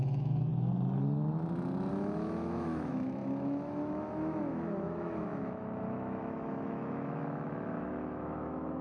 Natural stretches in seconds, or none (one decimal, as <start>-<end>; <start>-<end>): 0.5-1.9